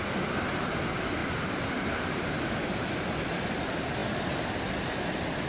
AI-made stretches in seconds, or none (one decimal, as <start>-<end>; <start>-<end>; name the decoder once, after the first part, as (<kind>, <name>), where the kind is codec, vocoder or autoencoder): 1.2-2.5 (vocoder, BigVGAN v2)